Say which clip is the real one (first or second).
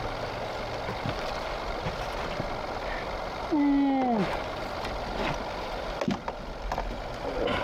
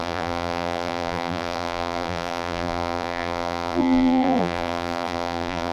first